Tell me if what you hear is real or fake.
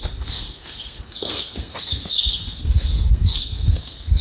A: fake